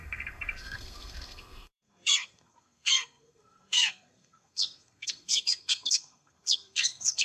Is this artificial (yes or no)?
yes